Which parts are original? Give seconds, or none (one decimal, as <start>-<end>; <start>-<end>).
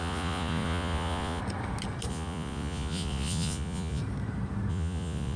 1.4-2.1; 4.0-4.7